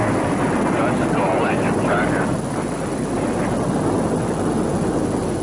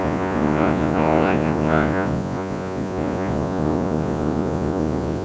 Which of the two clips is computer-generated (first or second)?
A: second